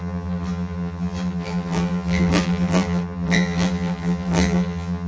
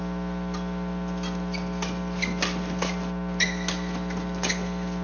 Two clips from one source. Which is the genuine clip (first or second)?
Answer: second